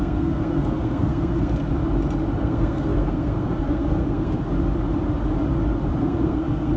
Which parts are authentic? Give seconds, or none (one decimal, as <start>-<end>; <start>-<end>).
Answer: 1.7-2.4; 4.5-6.0

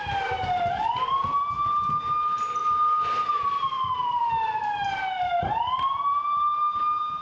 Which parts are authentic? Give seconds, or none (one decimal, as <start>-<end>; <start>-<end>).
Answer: 0.0-2.6; 4.3-7.2

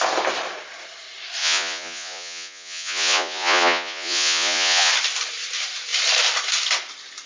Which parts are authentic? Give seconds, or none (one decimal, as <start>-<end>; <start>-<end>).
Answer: 0.0-1.4; 4.9-7.3

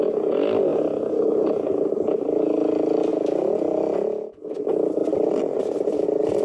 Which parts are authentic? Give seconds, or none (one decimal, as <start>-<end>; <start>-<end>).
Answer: 0.0-6.4